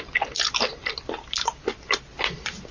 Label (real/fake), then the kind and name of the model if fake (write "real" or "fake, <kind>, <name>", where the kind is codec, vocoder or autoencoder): real